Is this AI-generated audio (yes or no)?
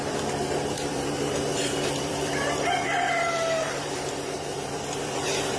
yes